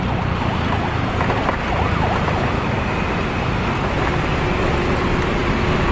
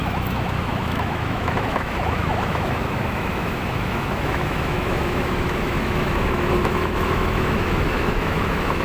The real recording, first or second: first